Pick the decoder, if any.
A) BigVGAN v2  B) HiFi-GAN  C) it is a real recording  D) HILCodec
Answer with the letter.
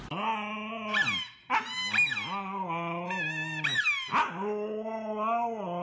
C